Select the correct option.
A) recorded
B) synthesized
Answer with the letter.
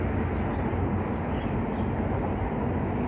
A